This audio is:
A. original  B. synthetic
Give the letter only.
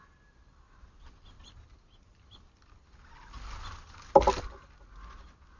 A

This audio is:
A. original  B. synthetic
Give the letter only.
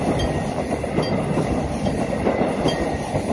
A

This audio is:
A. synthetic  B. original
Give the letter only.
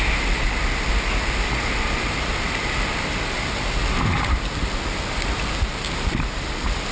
B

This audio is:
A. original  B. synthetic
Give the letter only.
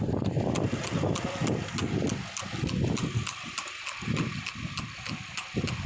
A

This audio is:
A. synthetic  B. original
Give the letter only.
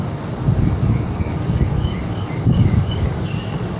A